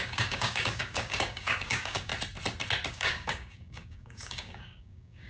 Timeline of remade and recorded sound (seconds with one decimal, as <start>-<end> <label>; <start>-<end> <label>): 0.0-2.1 remade; 2.1-2.9 recorded; 2.9-5.3 remade